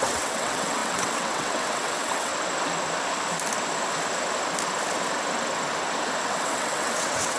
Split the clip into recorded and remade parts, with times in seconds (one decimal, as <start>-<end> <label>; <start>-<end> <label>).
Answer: 0.0-2.3 remade; 2.3-6.2 recorded; 6.2-7.4 remade

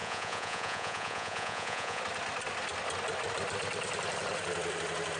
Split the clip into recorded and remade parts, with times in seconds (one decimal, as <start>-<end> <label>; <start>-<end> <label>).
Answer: 0.0-2.0 remade; 2.0-5.2 recorded

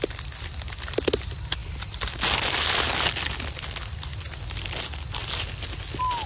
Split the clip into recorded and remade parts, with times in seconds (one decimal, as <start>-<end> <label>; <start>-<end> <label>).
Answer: 0.0-6.3 recorded

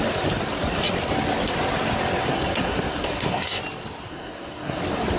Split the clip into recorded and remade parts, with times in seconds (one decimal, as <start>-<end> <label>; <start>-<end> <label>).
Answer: 0.0-2.3 recorded; 2.3-3.6 remade; 3.6-4.1 recorded; 4.1-4.8 remade; 4.8-5.2 recorded